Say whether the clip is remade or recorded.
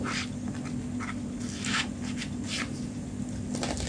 recorded